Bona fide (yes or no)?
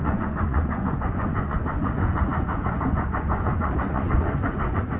no